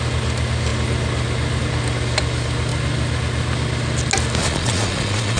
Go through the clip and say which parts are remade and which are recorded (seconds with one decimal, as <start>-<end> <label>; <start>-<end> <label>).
0.0-4.4 recorded; 4.4-5.4 remade